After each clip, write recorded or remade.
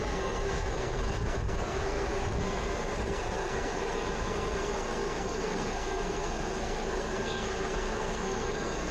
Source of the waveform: remade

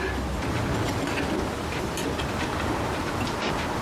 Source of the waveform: recorded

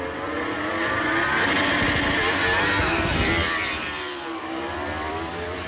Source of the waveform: remade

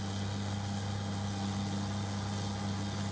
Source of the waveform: recorded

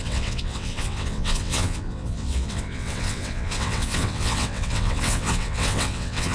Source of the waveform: remade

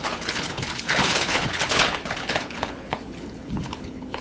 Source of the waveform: remade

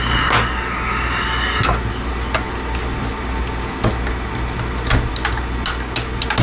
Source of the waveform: recorded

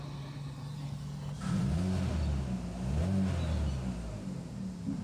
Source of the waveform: recorded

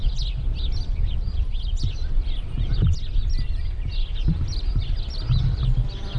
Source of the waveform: recorded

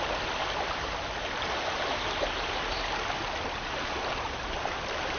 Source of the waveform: recorded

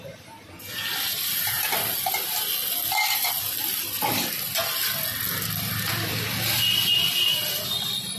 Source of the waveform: recorded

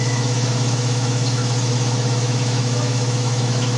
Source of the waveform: remade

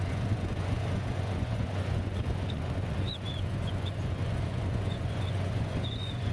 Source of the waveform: remade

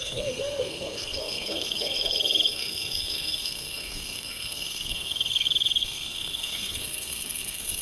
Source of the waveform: remade